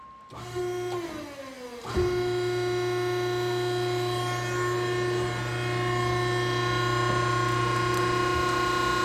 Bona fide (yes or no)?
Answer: yes